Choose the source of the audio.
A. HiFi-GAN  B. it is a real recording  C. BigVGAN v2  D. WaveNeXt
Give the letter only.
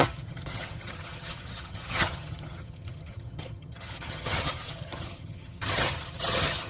A